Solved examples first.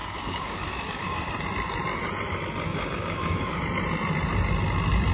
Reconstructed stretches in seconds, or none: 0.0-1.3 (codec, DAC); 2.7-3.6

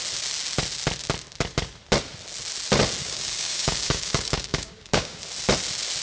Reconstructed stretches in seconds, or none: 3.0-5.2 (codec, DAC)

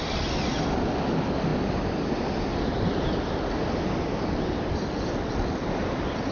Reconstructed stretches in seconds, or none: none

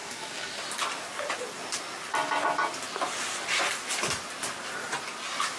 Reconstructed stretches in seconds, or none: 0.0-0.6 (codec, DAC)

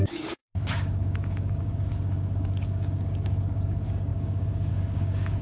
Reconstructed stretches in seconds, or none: 0.0-5.4 (codec, DAC)